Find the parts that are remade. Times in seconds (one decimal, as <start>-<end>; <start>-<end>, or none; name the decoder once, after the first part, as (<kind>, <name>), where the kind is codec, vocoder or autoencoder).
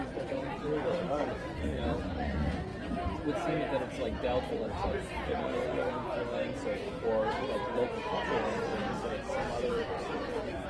0.0-2.7 (vocoder, Vocos); 4.5-6.1; 7.3-8.7; 9.7-10.7